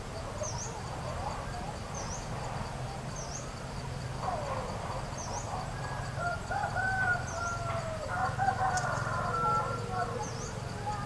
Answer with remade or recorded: recorded